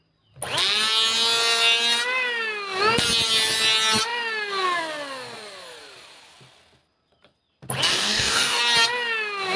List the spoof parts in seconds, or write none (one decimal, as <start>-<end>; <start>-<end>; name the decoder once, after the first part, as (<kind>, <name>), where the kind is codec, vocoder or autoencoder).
7.9-8.6 (codec, DAC)